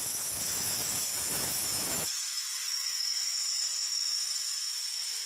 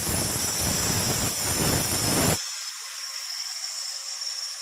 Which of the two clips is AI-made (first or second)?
first